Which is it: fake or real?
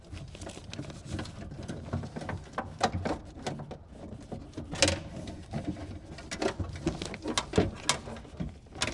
real